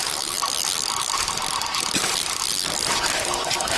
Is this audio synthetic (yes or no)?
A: no